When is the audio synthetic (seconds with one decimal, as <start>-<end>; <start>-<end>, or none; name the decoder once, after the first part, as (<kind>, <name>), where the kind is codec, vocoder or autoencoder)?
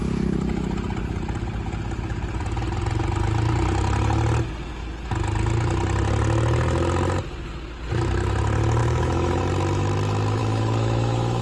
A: 8.8-9.4 (autoencoder, DAC-VAE); 10.4-11.4